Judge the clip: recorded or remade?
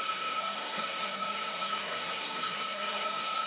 remade